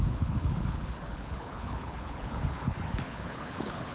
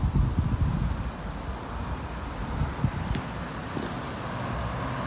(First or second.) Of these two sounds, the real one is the second